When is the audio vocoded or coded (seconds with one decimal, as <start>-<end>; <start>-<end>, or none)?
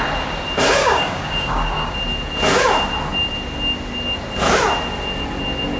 0.8-1.9